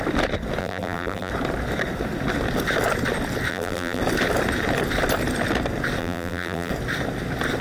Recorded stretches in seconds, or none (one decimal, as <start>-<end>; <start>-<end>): 0.0-0.6; 1.3-3.5; 4.0-6.0; 6.7-7.6